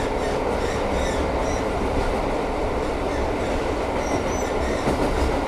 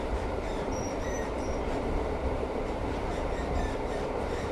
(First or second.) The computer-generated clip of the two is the second